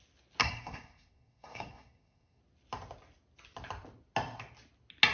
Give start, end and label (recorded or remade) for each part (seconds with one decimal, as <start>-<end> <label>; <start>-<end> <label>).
0.0-0.4 recorded; 0.4-2.4 remade; 2.4-5.1 recorded